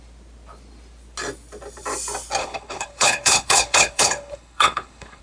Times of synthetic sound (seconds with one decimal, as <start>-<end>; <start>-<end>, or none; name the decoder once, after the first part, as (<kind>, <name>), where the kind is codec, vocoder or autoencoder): 2.4-5.2 (codec, HILCodec)